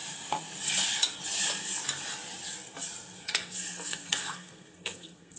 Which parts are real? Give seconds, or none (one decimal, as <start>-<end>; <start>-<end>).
0.0-3.2